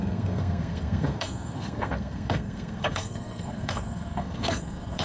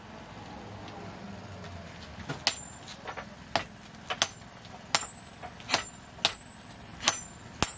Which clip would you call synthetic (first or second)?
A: first